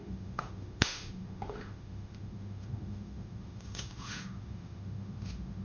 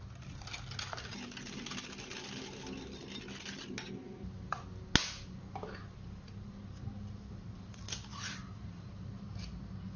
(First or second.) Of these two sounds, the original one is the second